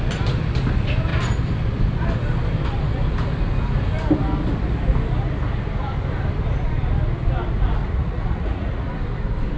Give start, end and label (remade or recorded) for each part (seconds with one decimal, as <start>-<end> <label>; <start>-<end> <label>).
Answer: 0.0-7.8 recorded; 7.8-8.9 remade; 8.9-9.6 recorded